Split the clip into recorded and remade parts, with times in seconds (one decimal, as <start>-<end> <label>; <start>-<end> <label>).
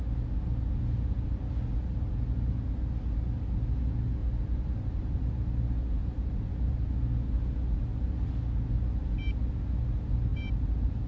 0.0-4.2 recorded; 4.2-5.2 remade; 5.2-6.0 recorded; 6.0-6.5 remade; 6.5-10.3 recorded; 10.3-11.1 remade